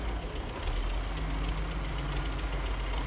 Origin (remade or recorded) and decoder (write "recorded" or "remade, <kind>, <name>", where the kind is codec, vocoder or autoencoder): recorded